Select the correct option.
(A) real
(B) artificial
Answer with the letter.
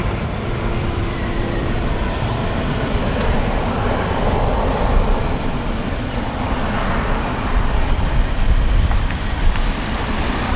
B